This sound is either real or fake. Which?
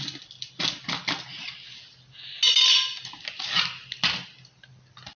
real